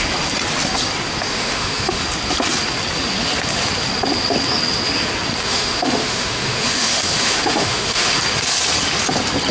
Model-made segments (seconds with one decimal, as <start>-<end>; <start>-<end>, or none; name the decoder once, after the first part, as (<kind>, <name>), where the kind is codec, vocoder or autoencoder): 1.3-2.0 (autoencoder, DAC-VAE); 5.4-8.2